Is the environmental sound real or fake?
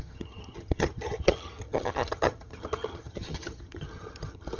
fake